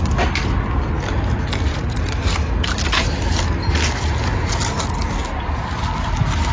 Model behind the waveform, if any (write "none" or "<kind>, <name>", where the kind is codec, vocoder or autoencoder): none